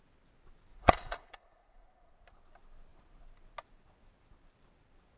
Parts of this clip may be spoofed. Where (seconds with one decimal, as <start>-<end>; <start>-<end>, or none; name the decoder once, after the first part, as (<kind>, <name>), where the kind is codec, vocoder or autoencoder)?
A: 0.7-2.1 (vocoder, Vocos)